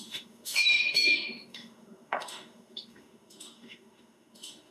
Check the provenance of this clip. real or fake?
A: fake